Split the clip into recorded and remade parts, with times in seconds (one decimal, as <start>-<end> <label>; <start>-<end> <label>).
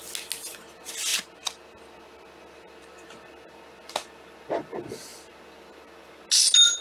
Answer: 0.0-6.8 recorded